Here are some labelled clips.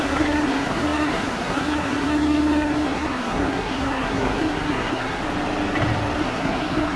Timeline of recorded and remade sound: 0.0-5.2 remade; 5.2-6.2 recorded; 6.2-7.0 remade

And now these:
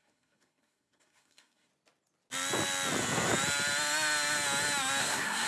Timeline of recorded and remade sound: 0.0-1.7 remade; 1.7-5.0 recorded; 5.0-5.5 remade